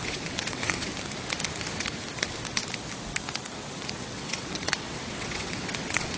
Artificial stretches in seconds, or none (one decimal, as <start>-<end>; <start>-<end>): 0.0-0.9; 4.0-6.2